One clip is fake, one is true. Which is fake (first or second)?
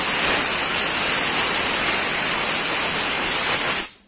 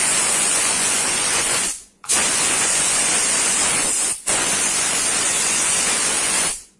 second